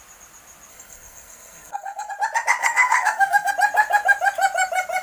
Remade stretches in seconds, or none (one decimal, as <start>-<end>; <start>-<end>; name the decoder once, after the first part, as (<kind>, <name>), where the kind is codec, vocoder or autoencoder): 0.7-2.1 (codec, SNAC); 2.6-3.5